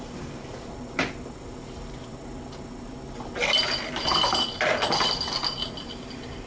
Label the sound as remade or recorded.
recorded